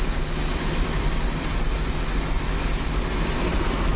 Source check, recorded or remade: recorded